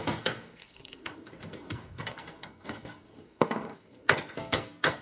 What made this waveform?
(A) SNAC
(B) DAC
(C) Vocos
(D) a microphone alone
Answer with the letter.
A